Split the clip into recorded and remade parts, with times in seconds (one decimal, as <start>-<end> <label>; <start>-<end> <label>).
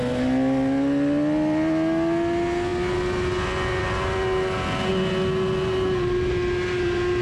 0.0-7.2 recorded